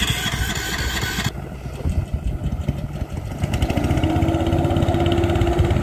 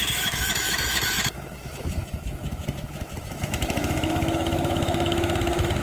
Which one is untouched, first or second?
first